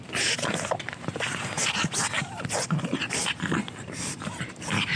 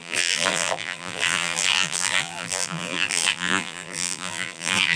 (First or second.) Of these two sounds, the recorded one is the first